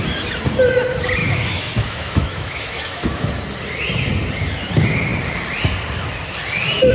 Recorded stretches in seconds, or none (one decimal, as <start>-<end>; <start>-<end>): 0.0-1.2; 3.3-6.9